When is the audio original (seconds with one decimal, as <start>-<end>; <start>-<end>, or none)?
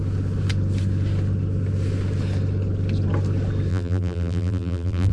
0.0-3.7